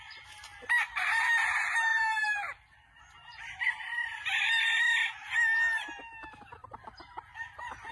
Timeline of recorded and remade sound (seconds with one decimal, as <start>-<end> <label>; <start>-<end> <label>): 0.0-1.9 recorded; 1.9-3.0 remade; 3.0-7.9 recorded